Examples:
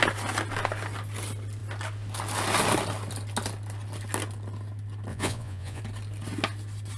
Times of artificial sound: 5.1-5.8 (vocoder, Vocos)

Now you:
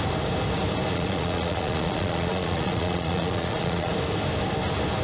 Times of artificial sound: 0.9-3.9 (vocoder, Vocos)

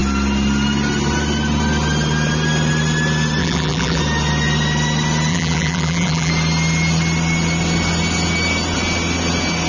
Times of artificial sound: 3.4-4.0 (vocoder, BigVGAN v2); 5.3-6.3

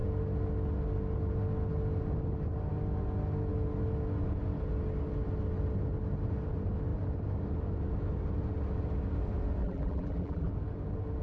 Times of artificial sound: 9.6-10.5 (vocoder, BigVGAN v2)

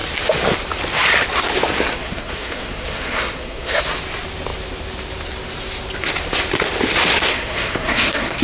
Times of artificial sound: 1.9-3.8 (codec, SNAC); 7.3-8.4

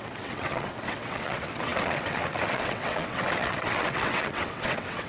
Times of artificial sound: 0.0-5.1 (vocoder, WaveNeXt)